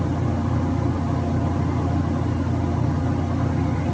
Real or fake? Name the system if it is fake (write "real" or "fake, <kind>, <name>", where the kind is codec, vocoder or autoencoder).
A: real